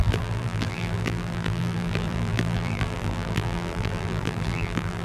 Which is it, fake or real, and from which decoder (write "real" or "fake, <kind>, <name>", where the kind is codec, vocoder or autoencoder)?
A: fake, vocoder, BigVGAN v2